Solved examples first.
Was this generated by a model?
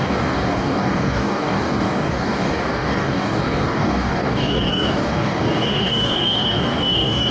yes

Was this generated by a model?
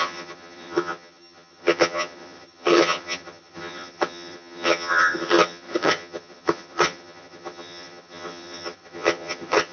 yes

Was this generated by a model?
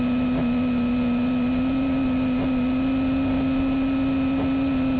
no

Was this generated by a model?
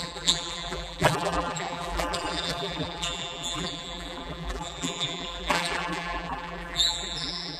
yes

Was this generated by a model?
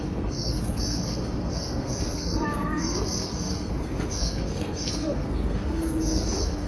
yes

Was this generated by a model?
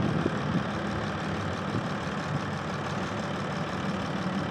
yes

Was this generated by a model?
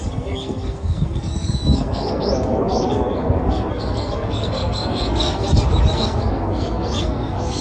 yes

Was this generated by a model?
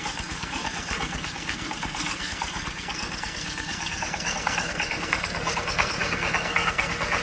yes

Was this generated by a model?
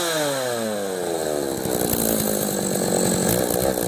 no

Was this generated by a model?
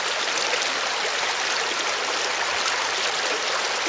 no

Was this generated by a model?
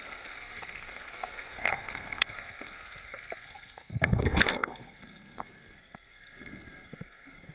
yes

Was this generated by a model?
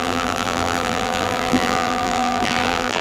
yes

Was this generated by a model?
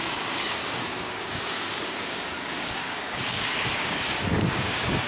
yes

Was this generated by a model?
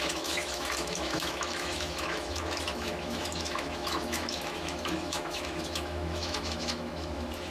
yes